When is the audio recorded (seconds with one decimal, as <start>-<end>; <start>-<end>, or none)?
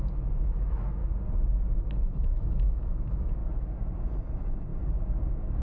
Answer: 1.0-1.8; 3.4-4.3; 4.7-5.6